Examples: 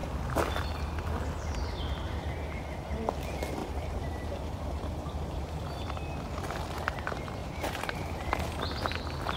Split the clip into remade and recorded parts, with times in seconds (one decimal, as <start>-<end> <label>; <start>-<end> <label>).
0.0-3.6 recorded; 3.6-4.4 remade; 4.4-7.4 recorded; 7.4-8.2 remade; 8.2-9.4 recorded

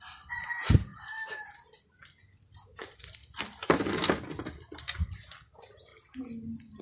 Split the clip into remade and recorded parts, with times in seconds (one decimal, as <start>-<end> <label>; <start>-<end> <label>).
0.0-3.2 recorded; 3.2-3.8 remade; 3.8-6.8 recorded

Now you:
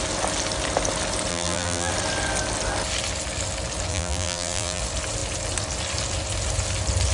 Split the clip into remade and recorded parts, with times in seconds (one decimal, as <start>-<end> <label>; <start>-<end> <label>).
0.0-1.3 recorded; 1.3-1.9 remade; 1.9-3.9 recorded; 3.9-4.8 remade; 4.8-7.1 recorded